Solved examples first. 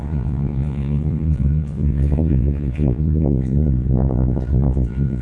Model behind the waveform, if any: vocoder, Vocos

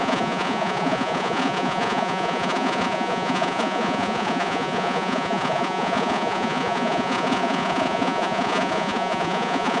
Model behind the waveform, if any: vocoder, Vocos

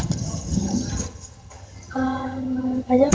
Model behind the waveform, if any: vocoder, HiFi-GAN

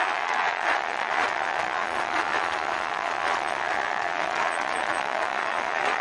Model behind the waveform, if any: vocoder, Vocos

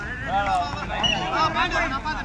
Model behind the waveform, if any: none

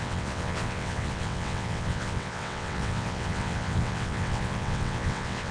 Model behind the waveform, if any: vocoder, WaveNeXt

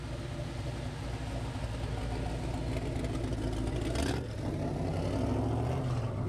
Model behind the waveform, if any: none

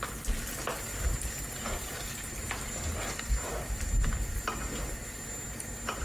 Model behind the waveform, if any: none